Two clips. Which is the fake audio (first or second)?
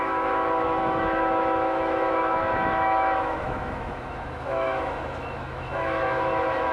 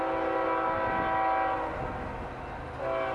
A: first